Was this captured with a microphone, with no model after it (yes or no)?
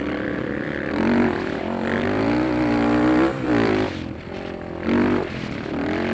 no